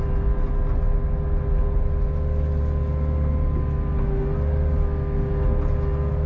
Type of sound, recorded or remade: recorded